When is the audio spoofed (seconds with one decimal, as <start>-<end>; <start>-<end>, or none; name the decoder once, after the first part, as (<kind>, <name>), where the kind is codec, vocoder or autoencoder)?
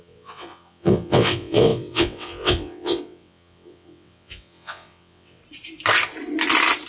0.0-5.4 (vocoder, WaveNeXt)